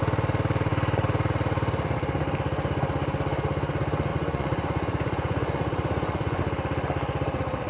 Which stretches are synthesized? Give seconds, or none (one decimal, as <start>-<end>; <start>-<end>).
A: 4.1-6.4